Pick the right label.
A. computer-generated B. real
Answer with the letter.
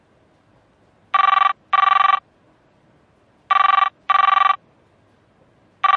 B